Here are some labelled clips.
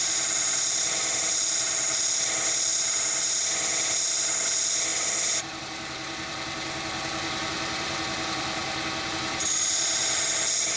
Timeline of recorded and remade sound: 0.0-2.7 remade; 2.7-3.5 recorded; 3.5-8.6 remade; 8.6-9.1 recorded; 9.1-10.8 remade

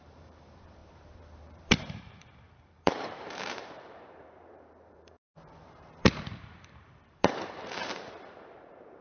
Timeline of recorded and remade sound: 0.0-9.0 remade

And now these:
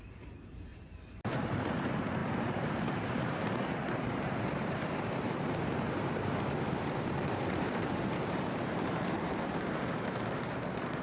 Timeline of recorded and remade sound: 0.0-11.0 remade

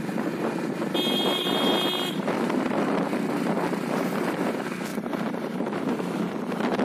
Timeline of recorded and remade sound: 0.0-4.9 recorded; 4.9-5.8 remade; 5.8-6.8 recorded

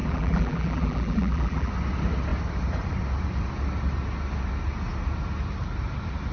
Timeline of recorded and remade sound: 0.0-1.7 remade; 1.7-6.3 recorded

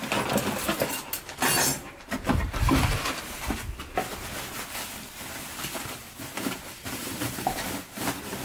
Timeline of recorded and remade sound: 0.0-1.7 recorded; 1.7-3.2 remade; 3.2-5.5 recorded; 5.5-7.7 remade; 7.7-8.4 recorded

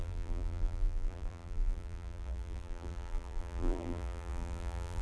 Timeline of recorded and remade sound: 0.0-5.0 remade

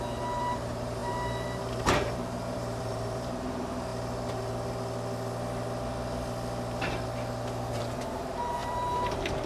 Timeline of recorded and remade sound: 0.0-3.9 remade; 3.9-7.8 recorded; 7.8-9.5 remade